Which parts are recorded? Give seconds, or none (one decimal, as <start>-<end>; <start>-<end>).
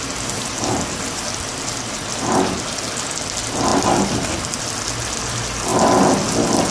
0.0-6.7